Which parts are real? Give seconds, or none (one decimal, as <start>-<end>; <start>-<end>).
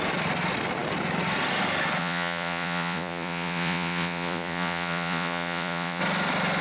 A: 0.0-2.0; 6.0-6.6